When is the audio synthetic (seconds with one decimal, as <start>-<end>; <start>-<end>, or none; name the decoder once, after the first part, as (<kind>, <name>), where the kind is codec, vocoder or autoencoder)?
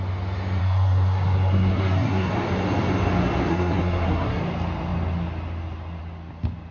0.6-2.3 (codec, SNAC); 3.5-4.4